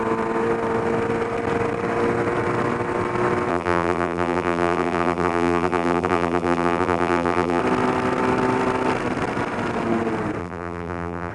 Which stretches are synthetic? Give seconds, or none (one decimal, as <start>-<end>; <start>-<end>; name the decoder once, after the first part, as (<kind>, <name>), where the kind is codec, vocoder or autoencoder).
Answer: 3.5-7.6 (vocoder, BigVGAN v2); 10.4-11.3